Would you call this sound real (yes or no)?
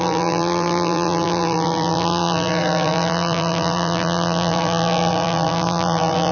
no